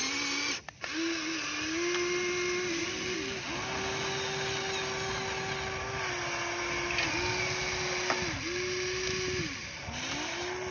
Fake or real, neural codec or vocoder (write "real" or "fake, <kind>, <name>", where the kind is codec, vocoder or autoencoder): real